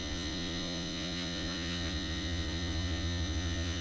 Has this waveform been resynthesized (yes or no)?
yes